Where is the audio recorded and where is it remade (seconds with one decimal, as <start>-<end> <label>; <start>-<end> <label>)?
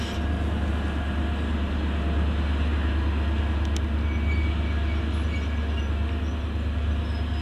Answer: 0.0-7.4 recorded